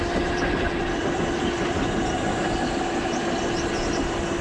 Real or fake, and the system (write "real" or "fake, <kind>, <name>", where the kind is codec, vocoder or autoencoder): real